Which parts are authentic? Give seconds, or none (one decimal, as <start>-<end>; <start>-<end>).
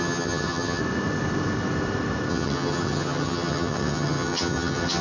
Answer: 0.8-2.3